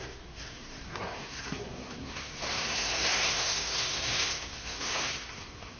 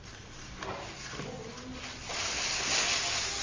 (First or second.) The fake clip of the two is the first